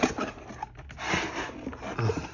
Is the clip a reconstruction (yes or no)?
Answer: no